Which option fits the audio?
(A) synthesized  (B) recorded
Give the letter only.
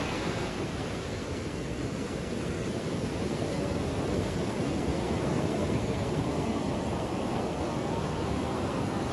A